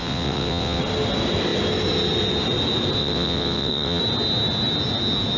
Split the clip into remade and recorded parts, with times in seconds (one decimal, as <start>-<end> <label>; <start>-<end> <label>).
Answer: 0.0-0.8 remade; 0.8-3.0 recorded; 3.0-4.0 remade; 4.0-5.4 recorded